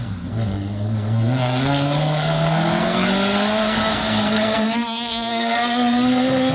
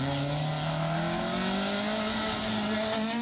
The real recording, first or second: second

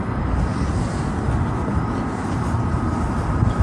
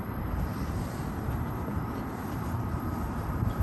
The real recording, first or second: first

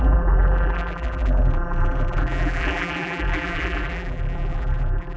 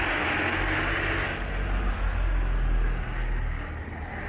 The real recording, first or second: second